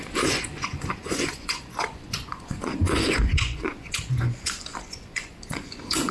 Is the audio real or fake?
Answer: fake